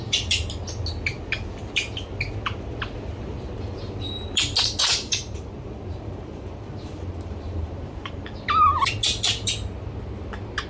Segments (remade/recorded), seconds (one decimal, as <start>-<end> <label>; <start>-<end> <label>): 0.0-4.8 recorded; 4.8-8.1 remade; 8.1-10.7 recorded